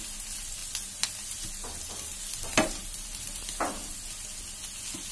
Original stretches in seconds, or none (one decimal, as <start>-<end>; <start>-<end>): 0.0-5.1